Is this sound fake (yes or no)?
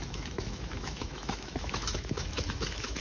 yes